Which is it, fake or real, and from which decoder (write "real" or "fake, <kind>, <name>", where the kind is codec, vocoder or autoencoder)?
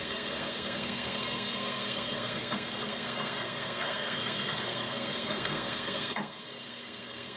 fake, codec, SNAC